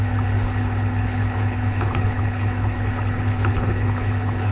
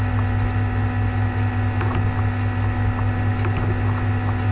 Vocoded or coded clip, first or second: first